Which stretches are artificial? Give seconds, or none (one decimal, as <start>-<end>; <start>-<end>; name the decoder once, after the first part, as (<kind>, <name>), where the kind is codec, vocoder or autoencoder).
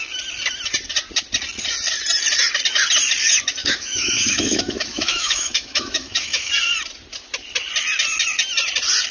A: 3.6-6.5 (autoencoder, DAC-VAE)